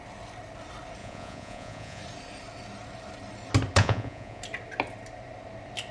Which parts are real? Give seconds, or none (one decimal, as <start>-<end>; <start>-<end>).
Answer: 0.0-1.0; 2.0-3.8; 4.4-5.9